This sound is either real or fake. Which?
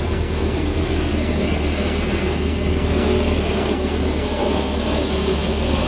fake